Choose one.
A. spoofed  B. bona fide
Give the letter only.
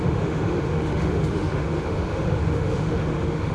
A